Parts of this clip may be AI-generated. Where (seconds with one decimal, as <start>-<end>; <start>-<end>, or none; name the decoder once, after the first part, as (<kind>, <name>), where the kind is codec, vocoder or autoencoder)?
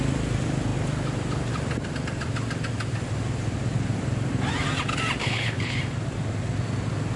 5.2-5.8 (codec, HILCodec)